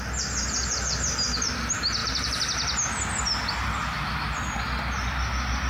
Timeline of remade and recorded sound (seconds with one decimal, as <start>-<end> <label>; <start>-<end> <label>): 0.0-5.7 recorded